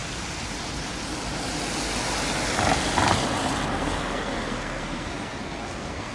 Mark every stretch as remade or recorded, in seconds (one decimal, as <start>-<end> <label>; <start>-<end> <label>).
0.0-3.7 recorded; 3.7-6.1 remade